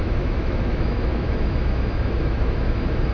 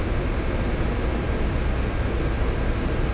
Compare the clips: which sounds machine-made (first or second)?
first